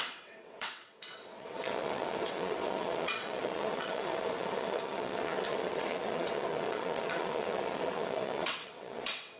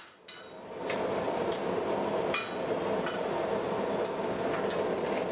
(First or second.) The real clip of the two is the second